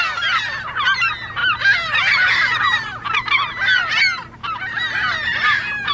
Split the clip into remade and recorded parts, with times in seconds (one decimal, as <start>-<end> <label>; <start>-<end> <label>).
0.0-5.9 recorded